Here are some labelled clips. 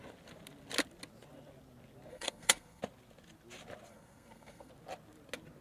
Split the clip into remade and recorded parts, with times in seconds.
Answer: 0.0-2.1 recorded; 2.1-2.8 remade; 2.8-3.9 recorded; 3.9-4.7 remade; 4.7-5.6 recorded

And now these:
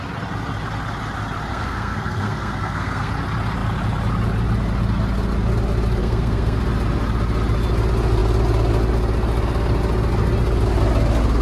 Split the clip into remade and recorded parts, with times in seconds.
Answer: 0.0-1.5 recorded; 1.5-3.1 remade; 3.1-6.0 recorded; 6.0-6.6 remade; 6.6-11.4 recorded

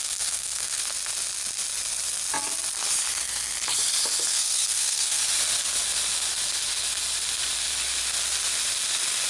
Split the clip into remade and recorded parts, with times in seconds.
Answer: 0.0-0.8 remade; 0.8-4.3 recorded; 4.3-5.2 remade; 5.2-9.3 recorded

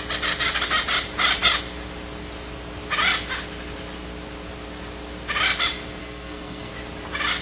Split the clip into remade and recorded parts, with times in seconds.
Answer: 0.0-6.0 recorded; 6.0-6.7 remade; 6.7-7.4 recorded

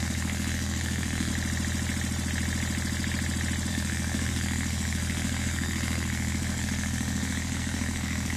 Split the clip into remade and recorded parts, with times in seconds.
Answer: 0.0-1.3 remade; 1.3-3.7 recorded; 3.7-8.4 remade

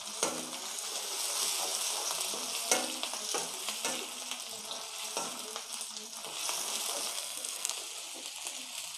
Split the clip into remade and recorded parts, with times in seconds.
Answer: 0.0-7.1 recorded; 7.1-7.7 remade; 7.7-9.0 recorded

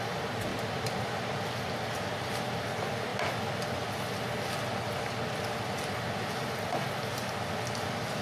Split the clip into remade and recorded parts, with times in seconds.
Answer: 0.0-8.2 recorded